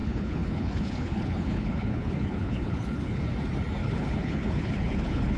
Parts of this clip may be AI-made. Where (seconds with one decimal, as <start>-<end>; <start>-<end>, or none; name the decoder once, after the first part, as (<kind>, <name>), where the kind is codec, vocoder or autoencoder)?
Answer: 0.0-3.2 (codec, HILCodec); 3.8-5.4